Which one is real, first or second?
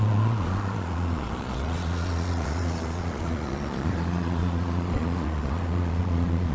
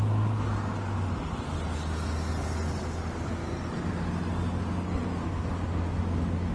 second